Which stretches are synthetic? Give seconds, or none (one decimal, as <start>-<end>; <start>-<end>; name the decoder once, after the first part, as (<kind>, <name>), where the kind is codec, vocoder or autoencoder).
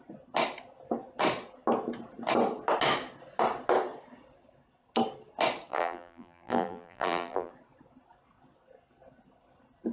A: 5.7-7.5 (vocoder, BigVGAN v2)